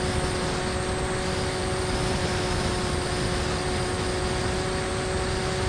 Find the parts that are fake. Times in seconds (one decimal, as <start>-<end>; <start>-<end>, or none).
none

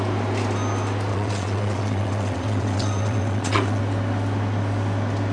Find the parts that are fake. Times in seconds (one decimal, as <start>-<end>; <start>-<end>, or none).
1.1-3.8

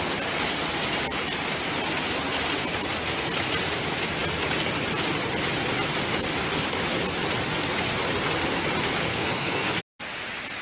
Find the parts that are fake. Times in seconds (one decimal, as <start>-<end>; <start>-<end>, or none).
9.0-9.8

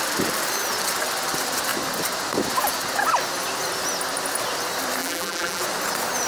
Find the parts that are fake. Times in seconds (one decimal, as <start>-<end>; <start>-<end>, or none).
5.0-5.6

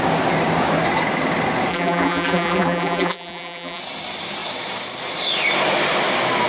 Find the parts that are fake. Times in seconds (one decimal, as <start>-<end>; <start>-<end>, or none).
1.7-3.8

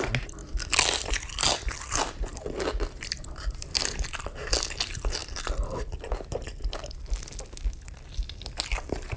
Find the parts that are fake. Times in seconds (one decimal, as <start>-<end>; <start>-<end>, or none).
none

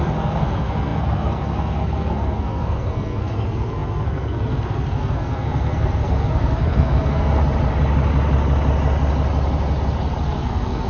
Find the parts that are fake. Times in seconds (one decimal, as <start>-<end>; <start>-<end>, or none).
0.0-7.4; 10.2-10.9